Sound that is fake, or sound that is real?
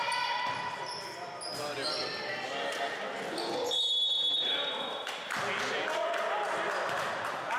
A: real